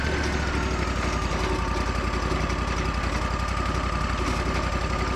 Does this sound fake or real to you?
real